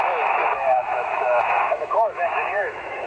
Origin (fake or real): fake